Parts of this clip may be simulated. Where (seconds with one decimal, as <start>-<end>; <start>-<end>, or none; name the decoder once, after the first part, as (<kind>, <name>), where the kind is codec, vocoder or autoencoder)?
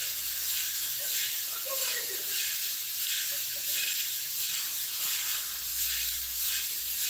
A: 0.0-2.2 (autoencoder, DAC-VAE); 3.8-5.0; 5.7-6.5